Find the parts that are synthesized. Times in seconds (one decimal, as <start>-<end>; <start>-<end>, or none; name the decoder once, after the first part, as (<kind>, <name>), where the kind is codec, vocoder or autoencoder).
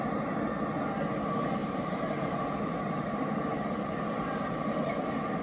1.6-4.8 (vocoder, BigVGAN v2)